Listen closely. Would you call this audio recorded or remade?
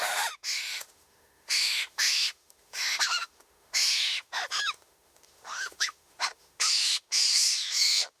remade